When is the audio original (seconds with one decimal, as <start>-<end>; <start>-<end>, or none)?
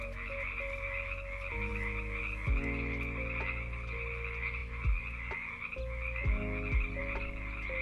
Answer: 0.0-7.8